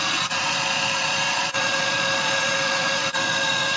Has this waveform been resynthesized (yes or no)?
yes